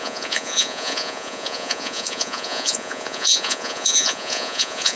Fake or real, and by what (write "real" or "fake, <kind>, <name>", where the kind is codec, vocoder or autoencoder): fake, vocoder, Vocos